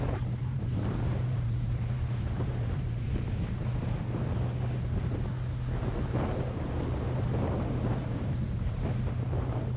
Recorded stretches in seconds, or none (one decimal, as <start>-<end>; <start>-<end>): 0.0-0.4; 3.3-8.0; 8.8-9.8